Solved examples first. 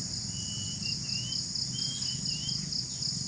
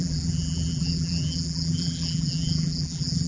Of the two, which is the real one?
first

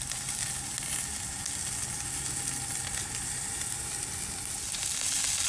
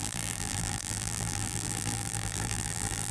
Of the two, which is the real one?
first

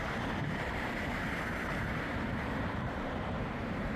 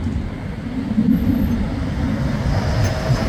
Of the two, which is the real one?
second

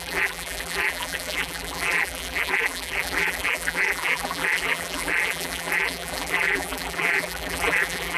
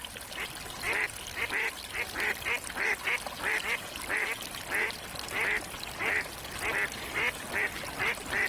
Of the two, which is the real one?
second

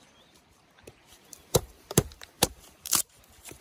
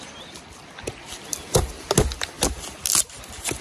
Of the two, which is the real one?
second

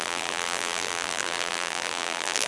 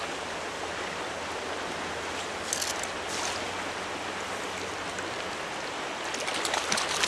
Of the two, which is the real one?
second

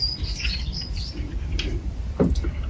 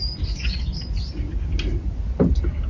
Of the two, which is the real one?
second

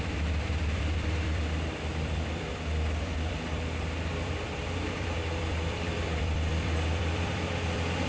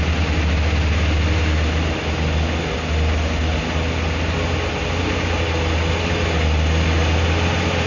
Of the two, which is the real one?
second